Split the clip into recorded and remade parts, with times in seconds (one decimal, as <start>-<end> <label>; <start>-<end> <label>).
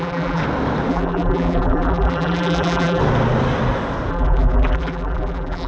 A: 0.0-0.4 remade; 0.4-0.9 recorded; 0.9-3.0 remade; 3.0-4.1 recorded; 4.1-5.7 remade